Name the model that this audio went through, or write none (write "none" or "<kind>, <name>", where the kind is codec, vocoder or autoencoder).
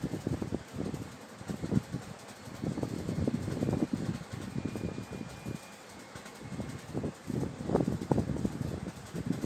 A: none